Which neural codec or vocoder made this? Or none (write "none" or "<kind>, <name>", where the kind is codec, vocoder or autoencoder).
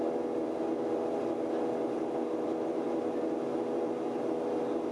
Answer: none